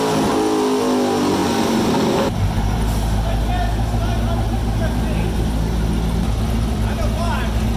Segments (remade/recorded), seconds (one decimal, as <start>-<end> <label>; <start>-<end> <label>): 0.0-1.4 recorded; 1.4-2.4 remade; 2.4-7.8 recorded